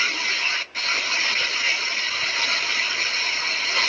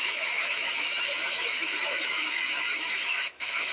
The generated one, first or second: second